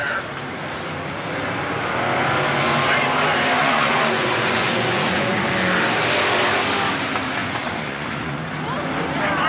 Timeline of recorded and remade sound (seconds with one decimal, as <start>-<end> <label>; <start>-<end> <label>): 0.0-3.6 recorded; 3.6-5.4 remade; 5.4-7.4 recorded; 7.4-8.4 remade; 8.4-9.5 recorded